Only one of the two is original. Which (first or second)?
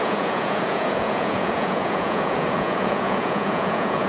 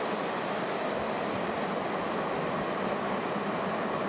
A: second